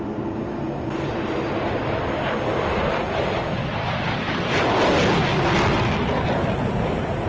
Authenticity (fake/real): real